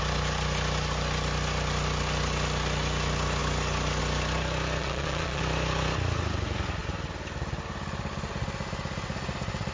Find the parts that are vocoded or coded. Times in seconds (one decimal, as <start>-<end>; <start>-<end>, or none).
4.8-5.4